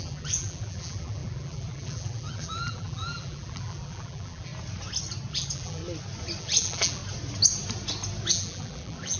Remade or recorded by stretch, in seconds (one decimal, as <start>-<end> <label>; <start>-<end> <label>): 0.0-4.5 remade; 4.5-5.3 recorded; 5.3-5.8 remade; 5.8-6.4 recorded; 6.4-7.0 remade; 7.0-8.3 recorded; 8.3-9.2 remade